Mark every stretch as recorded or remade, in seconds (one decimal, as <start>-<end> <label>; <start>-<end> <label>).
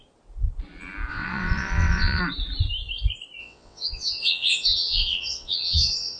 0.0-1.1 recorded; 1.1-2.2 remade; 2.2-3.4 recorded; 3.4-6.2 remade